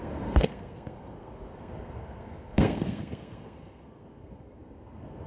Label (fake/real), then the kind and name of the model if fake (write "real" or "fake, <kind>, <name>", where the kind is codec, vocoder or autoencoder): fake, codec, SNAC